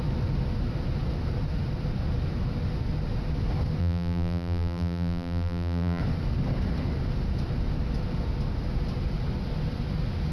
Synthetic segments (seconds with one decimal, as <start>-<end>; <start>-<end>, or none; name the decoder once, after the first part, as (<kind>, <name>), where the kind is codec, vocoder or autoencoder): 3.8-6.0 (vocoder, BigVGAN v2)